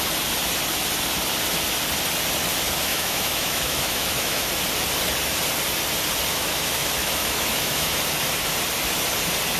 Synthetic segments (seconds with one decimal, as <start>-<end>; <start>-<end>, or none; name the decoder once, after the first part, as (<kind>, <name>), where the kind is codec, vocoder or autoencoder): 2.9-4.5 (autoencoder, DAC-VAE); 6.3-8.0